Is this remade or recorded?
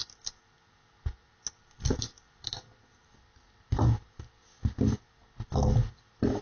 recorded